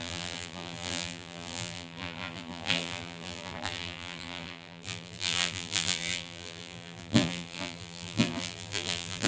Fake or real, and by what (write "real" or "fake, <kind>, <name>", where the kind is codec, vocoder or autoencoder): fake, vocoder, BigVGAN v2